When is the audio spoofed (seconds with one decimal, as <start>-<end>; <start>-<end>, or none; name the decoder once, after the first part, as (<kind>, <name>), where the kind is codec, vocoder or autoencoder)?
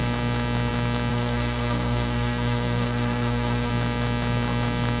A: 1.1-3.7 (codec, SNAC)